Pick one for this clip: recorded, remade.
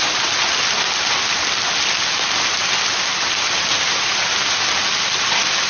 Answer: recorded